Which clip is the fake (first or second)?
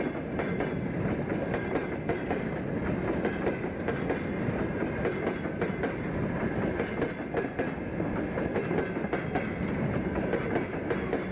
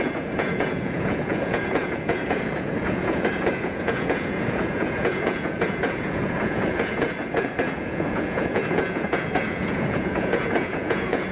second